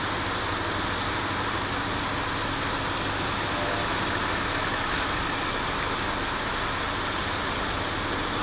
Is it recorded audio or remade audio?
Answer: recorded